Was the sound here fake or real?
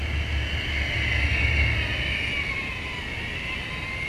real